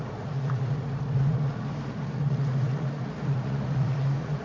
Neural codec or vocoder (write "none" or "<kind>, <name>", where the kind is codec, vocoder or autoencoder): vocoder, Vocos